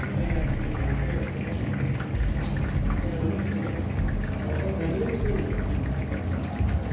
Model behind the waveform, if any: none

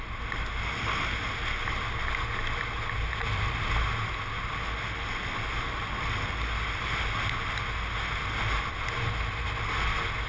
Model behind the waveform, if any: none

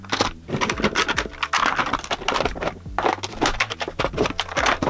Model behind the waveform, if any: none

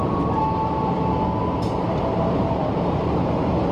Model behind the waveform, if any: none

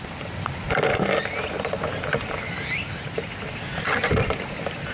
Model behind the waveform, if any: none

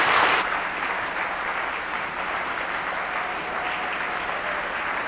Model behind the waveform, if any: none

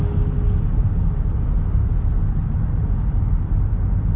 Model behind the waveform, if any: none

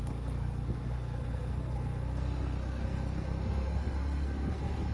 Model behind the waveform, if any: codec, SNAC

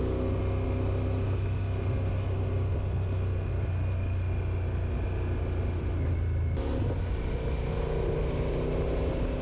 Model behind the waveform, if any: none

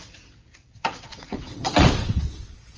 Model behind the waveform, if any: vocoder, WaveNeXt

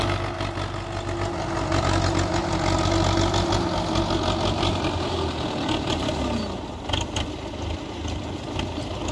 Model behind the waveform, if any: none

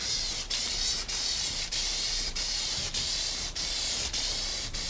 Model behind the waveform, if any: vocoder, BigVGAN v2